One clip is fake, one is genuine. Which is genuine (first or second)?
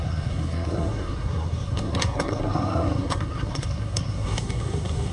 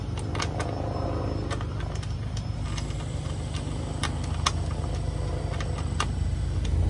second